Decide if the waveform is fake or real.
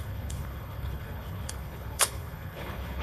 fake